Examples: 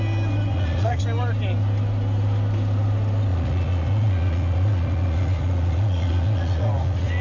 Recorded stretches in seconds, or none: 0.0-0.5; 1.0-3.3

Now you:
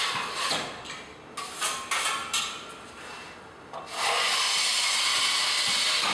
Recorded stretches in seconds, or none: 0.0-6.1

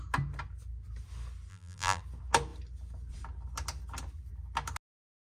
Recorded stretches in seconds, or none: 0.0-1.5; 2.0-5.3

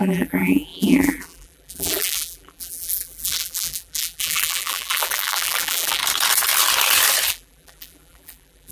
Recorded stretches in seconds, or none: 6.0-7.3

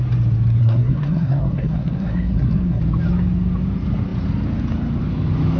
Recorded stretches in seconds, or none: 0.0-0.6; 2.8-5.6